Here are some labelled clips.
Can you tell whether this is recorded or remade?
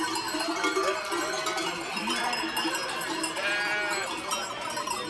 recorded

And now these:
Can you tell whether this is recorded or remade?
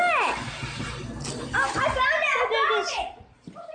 recorded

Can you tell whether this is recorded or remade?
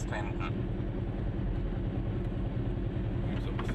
recorded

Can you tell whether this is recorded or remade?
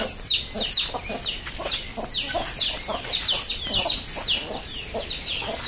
recorded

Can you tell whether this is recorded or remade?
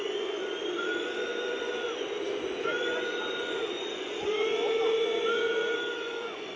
remade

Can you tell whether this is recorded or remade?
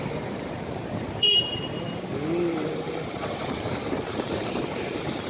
remade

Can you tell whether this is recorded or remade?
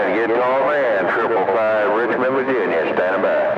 recorded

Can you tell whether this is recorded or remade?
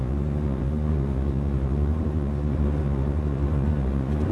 remade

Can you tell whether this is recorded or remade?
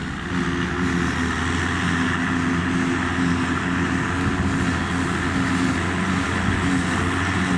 recorded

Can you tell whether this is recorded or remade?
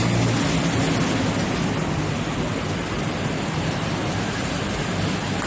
recorded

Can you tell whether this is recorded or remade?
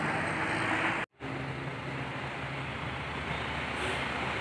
recorded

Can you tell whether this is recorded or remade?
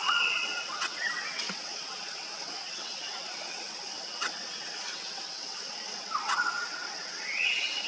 remade